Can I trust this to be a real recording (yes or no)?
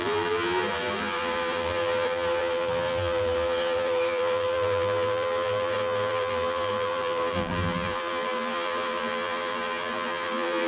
no